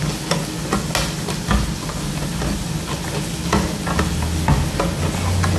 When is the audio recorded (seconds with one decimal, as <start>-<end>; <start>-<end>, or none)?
0.0-5.6